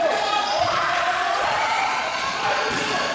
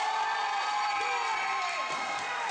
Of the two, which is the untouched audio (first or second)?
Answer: second